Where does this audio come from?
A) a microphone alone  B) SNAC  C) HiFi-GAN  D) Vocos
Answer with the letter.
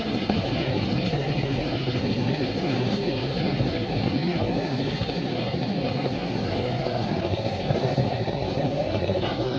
B